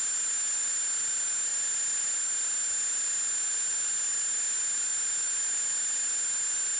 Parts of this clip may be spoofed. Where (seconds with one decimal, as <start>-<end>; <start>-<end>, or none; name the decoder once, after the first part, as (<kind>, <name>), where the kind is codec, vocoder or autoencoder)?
none